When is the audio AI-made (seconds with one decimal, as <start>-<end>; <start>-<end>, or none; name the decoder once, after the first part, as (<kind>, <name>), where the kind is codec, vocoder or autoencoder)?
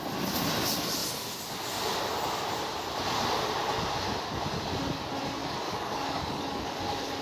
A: 5.4-6.8 (codec, DAC)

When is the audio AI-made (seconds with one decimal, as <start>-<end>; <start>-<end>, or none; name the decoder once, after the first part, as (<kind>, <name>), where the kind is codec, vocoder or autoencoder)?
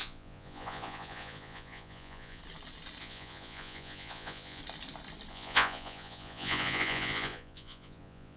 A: 0.0-2.4 (vocoder, Vocos); 3.0-4.6; 5.3-8.4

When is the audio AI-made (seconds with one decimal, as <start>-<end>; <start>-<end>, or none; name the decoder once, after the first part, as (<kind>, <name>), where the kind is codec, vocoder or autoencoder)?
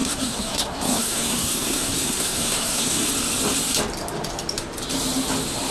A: 0.0-3.1 (codec, SNAC)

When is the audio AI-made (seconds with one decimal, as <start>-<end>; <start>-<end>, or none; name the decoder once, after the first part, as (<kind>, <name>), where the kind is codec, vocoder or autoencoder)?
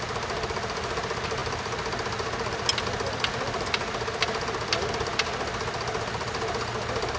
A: none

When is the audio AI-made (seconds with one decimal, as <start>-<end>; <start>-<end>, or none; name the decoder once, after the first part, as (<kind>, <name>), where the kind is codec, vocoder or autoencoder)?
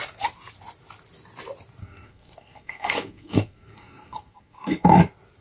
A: 1.8-5.0 (codec, SNAC)